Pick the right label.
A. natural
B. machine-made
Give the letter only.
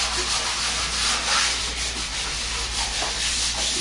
A